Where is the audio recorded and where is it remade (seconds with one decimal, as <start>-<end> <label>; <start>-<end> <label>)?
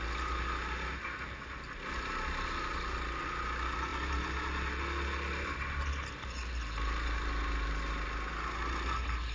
0.0-9.3 recorded